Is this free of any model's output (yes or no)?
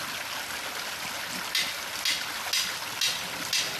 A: yes